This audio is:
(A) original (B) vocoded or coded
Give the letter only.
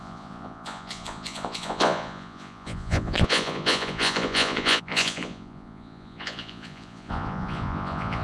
B